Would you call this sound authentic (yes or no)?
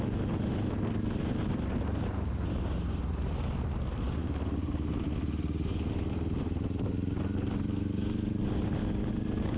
yes